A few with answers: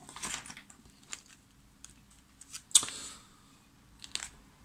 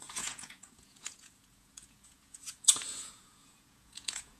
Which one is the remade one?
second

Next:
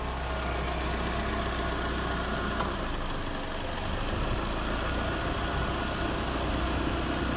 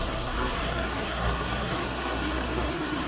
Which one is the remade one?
second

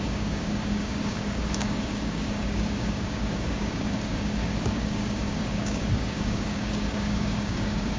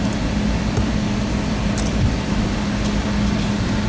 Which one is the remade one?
first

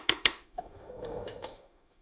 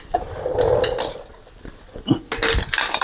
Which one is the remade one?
first